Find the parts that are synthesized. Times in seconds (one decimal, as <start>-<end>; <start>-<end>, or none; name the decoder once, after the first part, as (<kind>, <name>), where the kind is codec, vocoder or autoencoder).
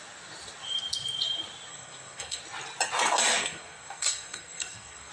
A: 1.7-2.4 (codec, SNAC); 3.4-5.1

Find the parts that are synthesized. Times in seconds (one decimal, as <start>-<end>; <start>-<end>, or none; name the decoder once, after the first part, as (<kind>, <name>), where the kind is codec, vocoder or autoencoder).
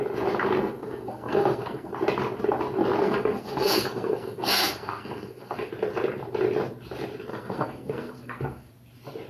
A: 0.6-1.9 (codec, SNAC); 3.0-5.7; 7.3-8.7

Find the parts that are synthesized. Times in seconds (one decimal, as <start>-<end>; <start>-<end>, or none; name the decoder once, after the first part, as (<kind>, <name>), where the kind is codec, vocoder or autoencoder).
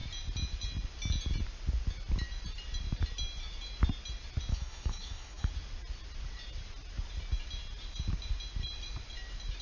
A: 4.5-5.5 (autoencoder, DAC-VAE)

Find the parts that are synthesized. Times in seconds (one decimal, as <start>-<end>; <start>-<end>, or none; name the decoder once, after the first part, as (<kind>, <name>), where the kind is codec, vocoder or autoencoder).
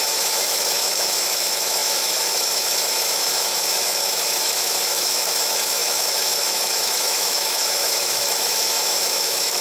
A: 0.0-9.6 (autoencoder, DAC-VAE)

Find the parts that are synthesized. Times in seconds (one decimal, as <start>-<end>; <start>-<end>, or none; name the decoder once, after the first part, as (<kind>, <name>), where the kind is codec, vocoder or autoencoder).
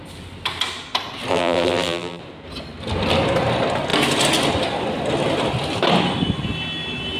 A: 1.3-2.2 (vocoder, BigVGAN v2)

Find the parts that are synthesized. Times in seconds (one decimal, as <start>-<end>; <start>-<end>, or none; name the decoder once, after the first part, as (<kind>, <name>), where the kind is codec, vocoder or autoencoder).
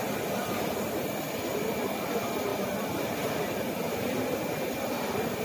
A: none